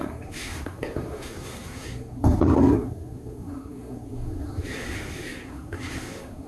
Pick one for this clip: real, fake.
fake